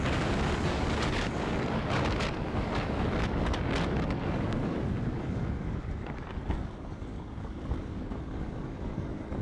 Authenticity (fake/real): fake